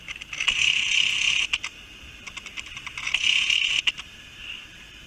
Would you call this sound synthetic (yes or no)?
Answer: no